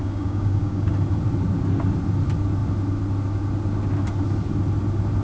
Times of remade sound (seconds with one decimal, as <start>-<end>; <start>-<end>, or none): 0.0-0.9